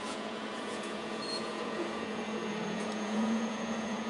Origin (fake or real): fake